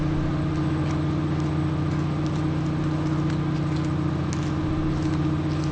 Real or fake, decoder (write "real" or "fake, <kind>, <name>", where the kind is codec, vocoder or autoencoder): real